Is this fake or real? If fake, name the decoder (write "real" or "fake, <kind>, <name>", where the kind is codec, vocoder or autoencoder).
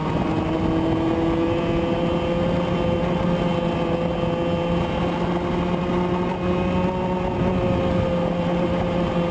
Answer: real